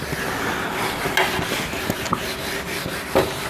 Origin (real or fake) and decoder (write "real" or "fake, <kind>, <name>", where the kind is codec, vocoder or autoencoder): real